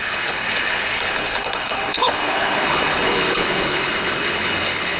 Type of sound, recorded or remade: remade